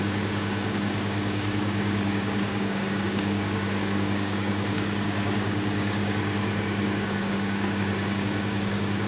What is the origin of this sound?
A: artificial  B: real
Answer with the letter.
A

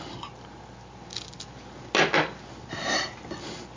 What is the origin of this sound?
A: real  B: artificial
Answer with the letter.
A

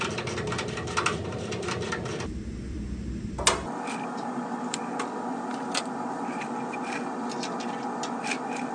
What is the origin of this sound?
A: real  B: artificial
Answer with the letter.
A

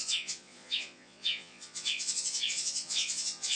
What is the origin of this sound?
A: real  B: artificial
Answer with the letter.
B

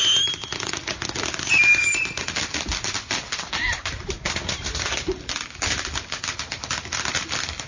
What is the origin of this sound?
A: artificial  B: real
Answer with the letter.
B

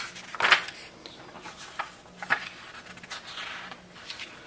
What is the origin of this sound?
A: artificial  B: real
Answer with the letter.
B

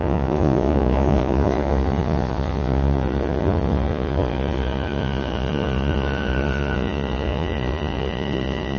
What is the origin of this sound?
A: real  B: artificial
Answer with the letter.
B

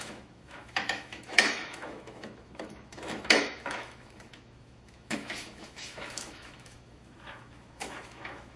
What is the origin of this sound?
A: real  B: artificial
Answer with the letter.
B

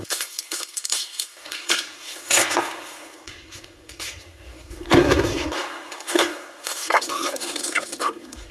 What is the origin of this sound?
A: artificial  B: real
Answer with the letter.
A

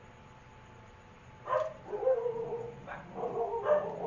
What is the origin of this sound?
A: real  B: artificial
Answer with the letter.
A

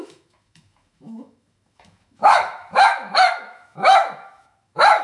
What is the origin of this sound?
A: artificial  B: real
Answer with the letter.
A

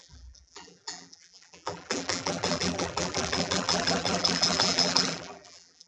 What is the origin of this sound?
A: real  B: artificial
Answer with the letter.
B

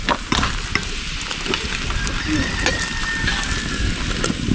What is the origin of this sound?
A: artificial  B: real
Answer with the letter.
B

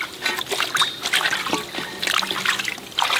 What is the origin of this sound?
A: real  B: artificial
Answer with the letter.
A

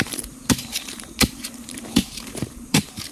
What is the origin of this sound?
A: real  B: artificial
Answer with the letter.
B